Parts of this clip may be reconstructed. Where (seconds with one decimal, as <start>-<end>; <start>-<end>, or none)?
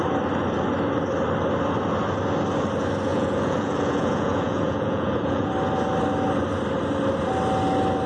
3.1-5.5